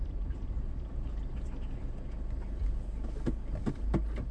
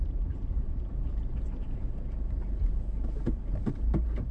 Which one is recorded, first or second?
first